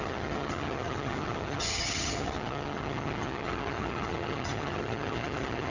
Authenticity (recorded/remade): remade